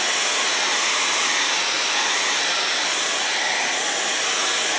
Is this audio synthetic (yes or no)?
no